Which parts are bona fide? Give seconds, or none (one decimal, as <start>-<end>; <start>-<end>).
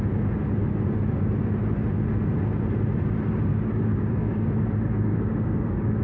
0.0-3.5; 4.5-5.1